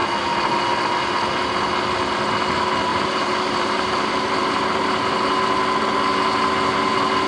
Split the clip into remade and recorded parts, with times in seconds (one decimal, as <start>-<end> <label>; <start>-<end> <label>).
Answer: 0.0-2.9 recorded; 2.9-5.0 remade; 5.0-7.3 recorded